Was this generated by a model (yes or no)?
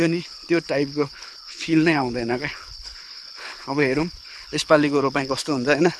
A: yes